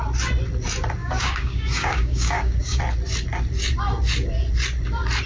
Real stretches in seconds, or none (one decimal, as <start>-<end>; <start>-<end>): 0.0-1.0; 2.8-5.3